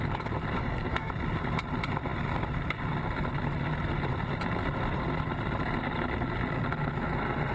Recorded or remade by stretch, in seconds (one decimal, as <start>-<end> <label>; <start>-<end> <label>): 0.0-0.6 recorded; 0.6-1.1 remade; 1.1-7.5 recorded